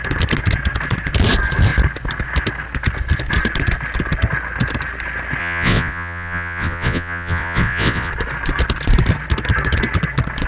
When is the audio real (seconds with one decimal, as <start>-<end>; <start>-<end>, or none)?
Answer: 0.0-5.4; 8.1-10.5